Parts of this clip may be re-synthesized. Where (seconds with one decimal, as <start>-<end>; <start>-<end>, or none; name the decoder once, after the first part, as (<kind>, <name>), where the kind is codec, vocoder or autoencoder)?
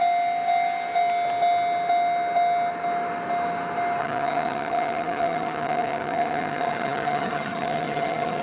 4.0-8.4 (vocoder, HiFi-GAN)